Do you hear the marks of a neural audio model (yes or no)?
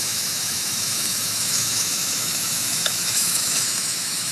yes